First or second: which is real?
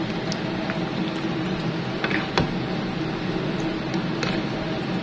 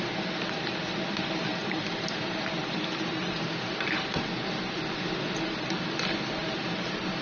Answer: first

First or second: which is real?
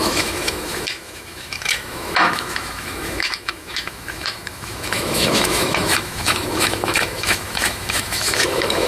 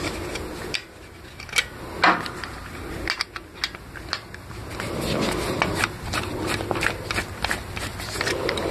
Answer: second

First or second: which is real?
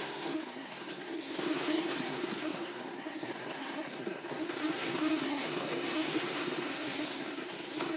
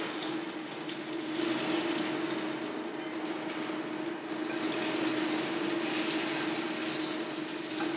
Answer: second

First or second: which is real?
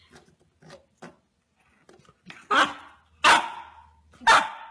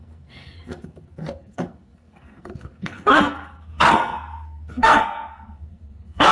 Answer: first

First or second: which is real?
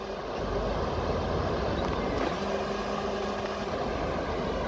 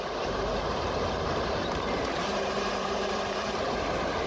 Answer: first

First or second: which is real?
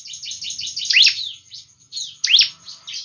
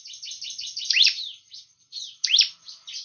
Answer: first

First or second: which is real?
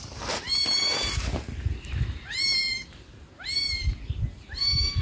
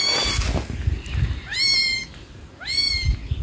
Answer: second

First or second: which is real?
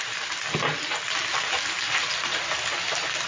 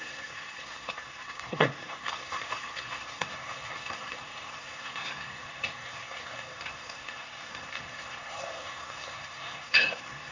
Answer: first